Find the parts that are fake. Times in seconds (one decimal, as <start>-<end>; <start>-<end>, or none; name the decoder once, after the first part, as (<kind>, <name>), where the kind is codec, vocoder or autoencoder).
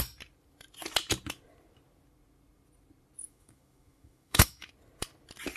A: 3.2-4.7 (autoencoder, DAC-VAE)